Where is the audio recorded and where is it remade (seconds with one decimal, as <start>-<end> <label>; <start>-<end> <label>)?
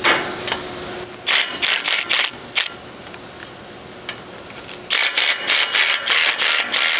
0.0-7.0 recorded